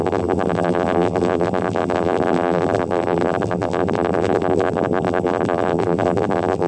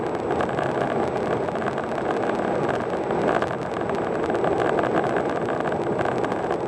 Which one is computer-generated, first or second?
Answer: first